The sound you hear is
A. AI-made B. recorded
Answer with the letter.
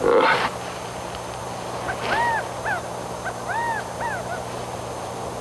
B